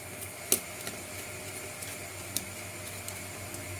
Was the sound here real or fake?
real